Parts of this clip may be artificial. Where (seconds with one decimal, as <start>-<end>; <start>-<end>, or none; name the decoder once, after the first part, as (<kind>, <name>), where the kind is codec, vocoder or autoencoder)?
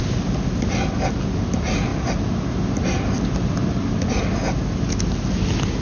none